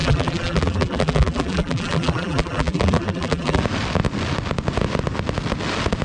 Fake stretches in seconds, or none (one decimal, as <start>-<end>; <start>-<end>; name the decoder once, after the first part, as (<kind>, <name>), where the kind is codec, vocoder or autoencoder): 0.0-3.6 (vocoder, BigVGAN v2)

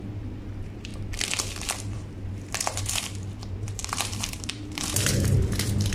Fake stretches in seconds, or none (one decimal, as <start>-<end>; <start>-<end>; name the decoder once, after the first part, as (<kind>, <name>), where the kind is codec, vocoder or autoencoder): 0.0-0.9 (vocoder, BigVGAN v2); 1.5-5.9

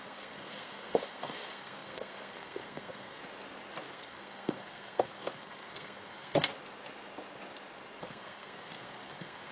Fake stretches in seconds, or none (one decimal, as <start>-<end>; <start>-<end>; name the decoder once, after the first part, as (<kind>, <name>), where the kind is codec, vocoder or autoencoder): 0.0-3.2 (codec, SNAC); 3.9-6.5; 8.0-9.5

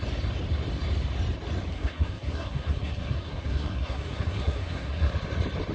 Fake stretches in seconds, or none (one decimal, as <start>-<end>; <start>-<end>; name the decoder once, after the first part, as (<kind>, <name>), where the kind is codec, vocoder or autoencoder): 1.7-5.1 (codec, SNAC)

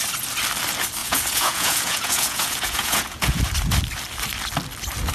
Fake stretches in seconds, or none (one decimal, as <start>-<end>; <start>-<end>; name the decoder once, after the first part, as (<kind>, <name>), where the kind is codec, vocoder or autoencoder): 1.0-3.4 (vocoder, Vocos)

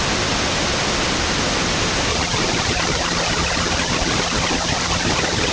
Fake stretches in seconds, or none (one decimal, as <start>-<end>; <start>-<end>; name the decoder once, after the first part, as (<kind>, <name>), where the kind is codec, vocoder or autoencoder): 2.1-5.5 (vocoder, BigVGAN v2)

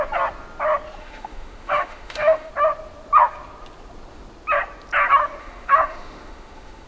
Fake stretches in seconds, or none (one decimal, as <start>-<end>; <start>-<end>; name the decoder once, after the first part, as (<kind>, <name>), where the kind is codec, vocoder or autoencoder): 1.0-2.5 (autoencoder, DAC-VAE); 5.4-6.9

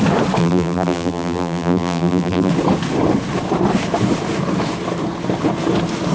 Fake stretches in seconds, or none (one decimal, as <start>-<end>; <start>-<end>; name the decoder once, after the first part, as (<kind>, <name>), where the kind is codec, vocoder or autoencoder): 0.4-2.5 (vocoder, BigVGAN v2)